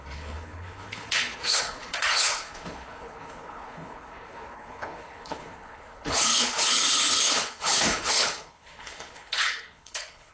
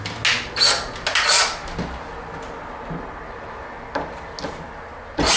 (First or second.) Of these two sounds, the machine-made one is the first